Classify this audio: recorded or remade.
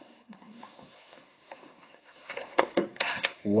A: remade